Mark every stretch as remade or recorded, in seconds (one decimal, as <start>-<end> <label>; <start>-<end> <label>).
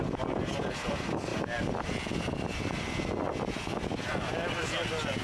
0.0-5.2 recorded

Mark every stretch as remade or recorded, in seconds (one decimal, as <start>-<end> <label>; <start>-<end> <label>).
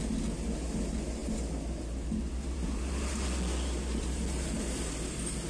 0.0-5.5 recorded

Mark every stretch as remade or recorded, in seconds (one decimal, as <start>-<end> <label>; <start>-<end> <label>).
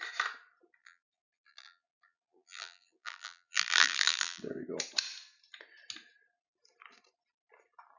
0.0-0.8 recorded; 0.8-4.4 remade; 4.4-8.0 recorded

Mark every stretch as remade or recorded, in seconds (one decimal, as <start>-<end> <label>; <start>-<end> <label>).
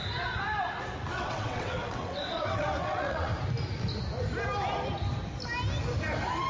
0.0-1.1 recorded; 1.1-3.3 remade; 3.3-6.5 recorded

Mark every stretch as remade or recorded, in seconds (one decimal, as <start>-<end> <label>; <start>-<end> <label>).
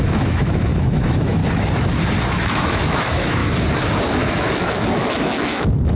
0.0-1.4 remade; 1.4-2.3 recorded; 2.3-3.4 remade; 3.4-4.2 recorded; 4.2-5.9 remade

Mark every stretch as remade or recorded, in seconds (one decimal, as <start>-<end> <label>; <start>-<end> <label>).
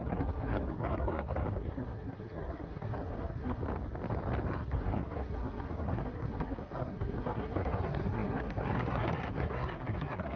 0.0-3.6 remade; 3.6-4.5 recorded; 4.5-10.4 remade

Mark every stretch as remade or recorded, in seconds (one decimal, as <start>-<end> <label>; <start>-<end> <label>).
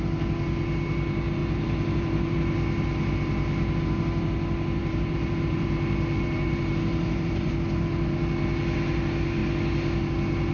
0.0-1.4 recorded; 1.4-2.4 remade; 2.4-4.8 recorded; 4.8-7.5 remade; 7.5-10.5 recorded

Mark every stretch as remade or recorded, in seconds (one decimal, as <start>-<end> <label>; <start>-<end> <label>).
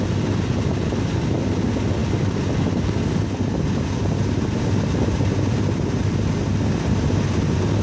0.0-7.8 recorded